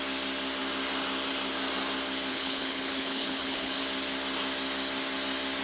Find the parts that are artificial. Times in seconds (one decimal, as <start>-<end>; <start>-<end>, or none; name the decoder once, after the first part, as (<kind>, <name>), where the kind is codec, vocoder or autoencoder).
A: 2.3-3.8 (codec, HILCodec)